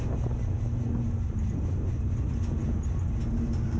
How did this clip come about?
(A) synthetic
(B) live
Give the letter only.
B